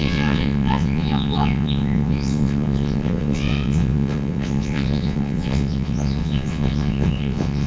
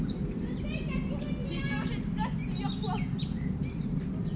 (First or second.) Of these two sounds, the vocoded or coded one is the first